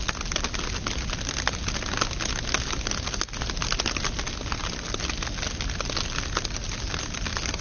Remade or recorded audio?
recorded